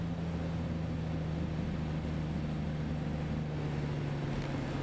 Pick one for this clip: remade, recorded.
recorded